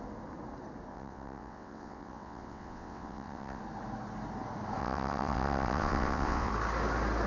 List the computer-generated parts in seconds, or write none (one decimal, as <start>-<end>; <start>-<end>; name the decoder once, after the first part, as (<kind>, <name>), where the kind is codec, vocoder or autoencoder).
0.9-3.6 (vocoder, WaveNeXt); 4.8-6.5